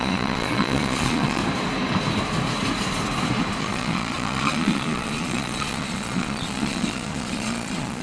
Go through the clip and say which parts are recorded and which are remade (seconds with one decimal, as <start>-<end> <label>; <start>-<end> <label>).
0.0-1.4 remade; 1.4-3.6 recorded; 3.6-8.0 remade